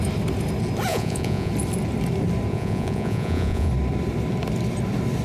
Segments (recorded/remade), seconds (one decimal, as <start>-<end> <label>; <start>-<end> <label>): 0.0-0.9 recorded; 0.9-1.5 remade; 1.5-2.5 recorded; 2.5-3.7 remade; 3.7-5.2 recorded